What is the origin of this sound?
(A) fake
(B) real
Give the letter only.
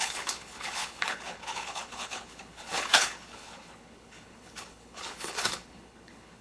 A